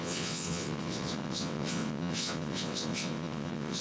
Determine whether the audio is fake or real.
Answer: fake